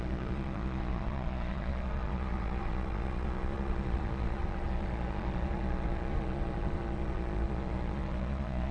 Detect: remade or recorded remade